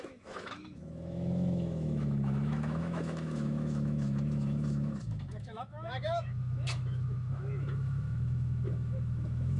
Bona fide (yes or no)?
no